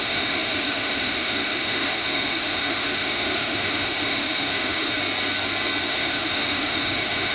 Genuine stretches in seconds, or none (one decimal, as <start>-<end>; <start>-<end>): 5.0-5.9

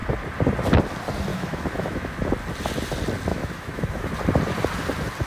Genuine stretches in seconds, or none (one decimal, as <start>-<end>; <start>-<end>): 0.0-1.3; 2.3-3.3; 4.1-5.3

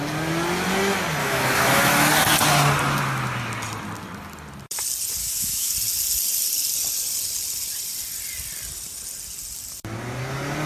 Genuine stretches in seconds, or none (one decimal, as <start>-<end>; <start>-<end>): 0.0-1.2; 2.1-5.2; 5.7-10.7

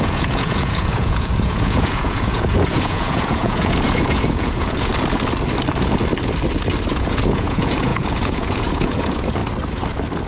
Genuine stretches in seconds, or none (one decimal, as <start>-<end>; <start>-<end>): 4.9-6.9; 9.4-10.3

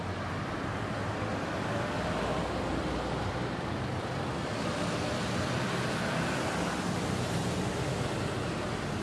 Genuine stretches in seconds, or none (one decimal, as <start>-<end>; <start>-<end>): 0.0-9.0